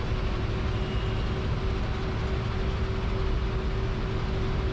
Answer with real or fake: real